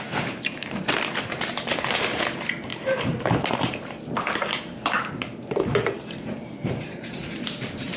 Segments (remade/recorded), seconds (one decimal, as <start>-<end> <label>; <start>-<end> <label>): 0.0-5.7 remade; 5.7-6.3 recorded; 6.3-8.0 remade